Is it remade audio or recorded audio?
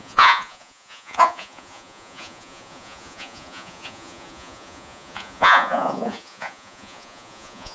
remade